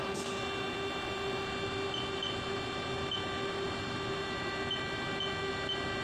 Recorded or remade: recorded